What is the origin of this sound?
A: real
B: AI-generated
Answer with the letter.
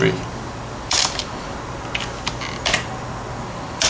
A